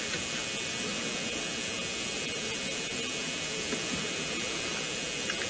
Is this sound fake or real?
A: real